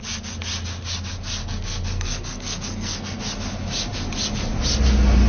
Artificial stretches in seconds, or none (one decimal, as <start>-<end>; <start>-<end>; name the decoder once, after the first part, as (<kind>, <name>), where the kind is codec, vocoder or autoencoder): 1.4-3.2 (codec, SNAC)